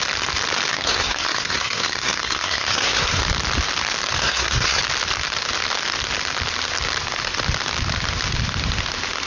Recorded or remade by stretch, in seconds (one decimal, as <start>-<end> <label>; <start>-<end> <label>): 0.0-0.7 recorded; 0.7-3.2 remade; 3.2-4.2 recorded; 4.2-4.8 remade; 4.8-9.3 recorded